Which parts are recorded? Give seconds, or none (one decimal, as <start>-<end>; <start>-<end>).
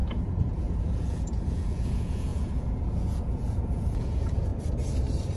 4.5-5.4